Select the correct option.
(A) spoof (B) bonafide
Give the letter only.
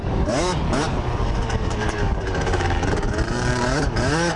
A